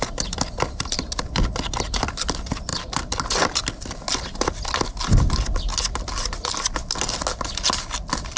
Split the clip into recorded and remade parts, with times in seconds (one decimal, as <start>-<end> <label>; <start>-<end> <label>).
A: 0.0-8.4 recorded